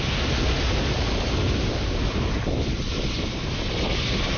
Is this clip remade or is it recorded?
recorded